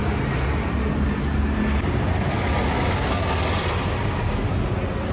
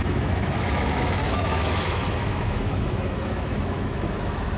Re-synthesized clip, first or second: second